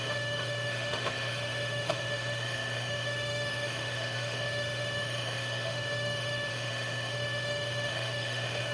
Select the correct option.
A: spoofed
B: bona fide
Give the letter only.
A